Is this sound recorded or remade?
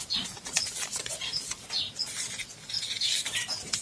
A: recorded